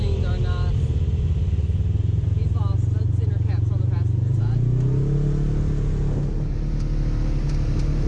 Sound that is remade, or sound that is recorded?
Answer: recorded